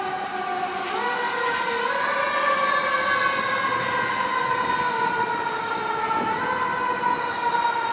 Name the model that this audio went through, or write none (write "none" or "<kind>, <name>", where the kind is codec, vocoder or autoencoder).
none